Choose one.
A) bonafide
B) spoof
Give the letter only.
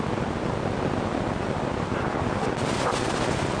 A